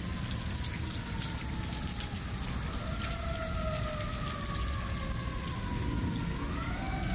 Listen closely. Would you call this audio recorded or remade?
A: recorded